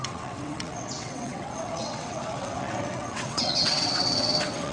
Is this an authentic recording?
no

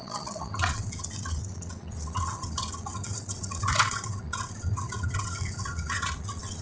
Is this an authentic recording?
no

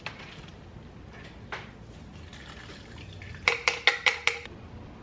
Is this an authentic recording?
yes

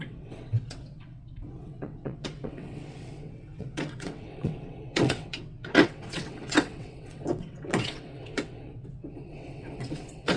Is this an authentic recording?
no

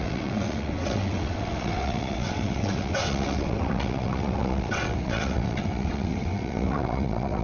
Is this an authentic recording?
no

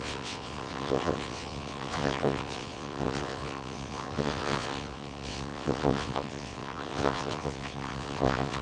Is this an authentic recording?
no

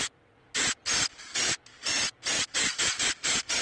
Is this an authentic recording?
yes